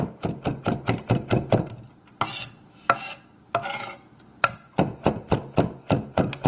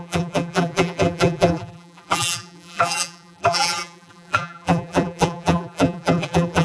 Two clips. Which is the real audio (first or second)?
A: first